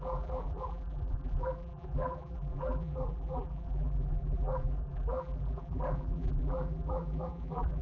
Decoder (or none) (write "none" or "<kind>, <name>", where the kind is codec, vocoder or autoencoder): vocoder, BigVGAN v2